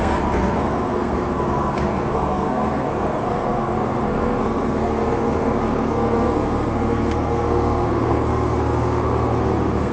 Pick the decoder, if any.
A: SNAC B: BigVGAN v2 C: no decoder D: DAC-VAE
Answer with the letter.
A